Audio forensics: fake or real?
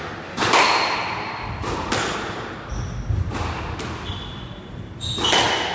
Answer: real